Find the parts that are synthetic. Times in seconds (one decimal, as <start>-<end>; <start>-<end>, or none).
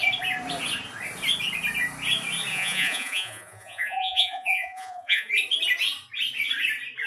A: 2.5-5.3